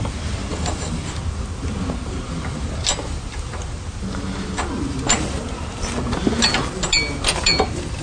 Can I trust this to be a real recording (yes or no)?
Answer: yes